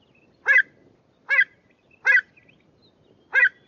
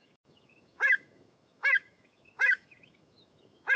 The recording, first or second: first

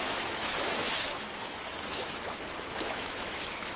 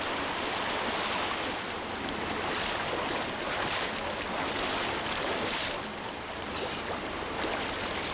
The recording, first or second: second